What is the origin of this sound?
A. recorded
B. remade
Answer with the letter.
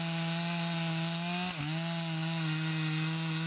A